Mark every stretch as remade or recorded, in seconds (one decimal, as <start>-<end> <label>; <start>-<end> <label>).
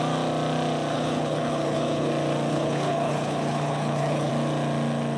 0.0-0.9 recorded; 0.9-2.1 remade; 2.1-2.5 recorded; 2.5-4.3 remade; 4.3-5.2 recorded